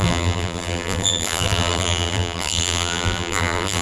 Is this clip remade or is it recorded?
remade